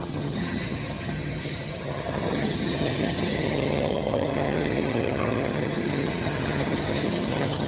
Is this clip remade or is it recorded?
remade